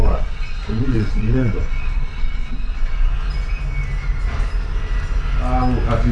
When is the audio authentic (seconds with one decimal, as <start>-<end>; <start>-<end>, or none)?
3.1-6.1